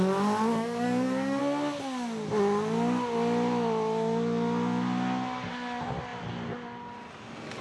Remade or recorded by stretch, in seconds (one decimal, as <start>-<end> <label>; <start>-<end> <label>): 0.0-0.5 recorded; 0.5-1.4 remade; 1.4-7.6 recorded